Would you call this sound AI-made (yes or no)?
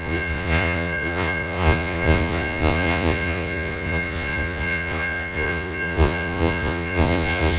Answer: yes